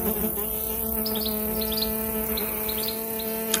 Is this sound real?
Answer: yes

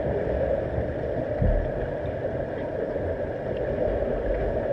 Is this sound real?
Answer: yes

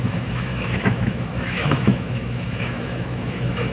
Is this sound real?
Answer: no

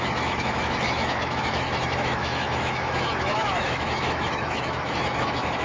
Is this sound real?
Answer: no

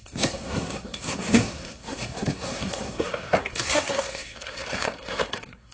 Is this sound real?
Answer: no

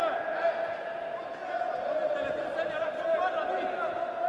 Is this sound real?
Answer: yes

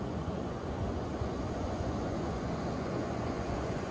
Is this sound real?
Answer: no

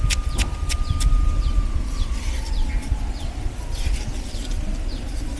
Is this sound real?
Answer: yes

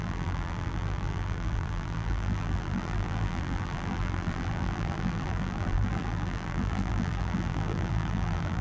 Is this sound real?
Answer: no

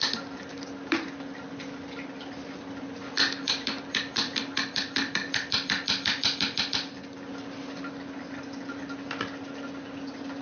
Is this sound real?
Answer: yes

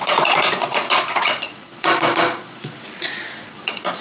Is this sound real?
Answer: no